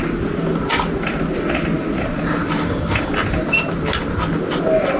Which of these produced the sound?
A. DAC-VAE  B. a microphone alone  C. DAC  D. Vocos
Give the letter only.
B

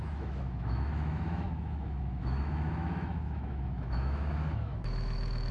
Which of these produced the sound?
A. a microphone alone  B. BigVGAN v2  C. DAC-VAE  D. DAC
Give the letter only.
C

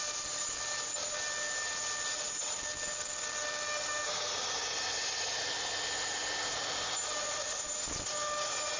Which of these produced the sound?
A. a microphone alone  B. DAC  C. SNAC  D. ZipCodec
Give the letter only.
A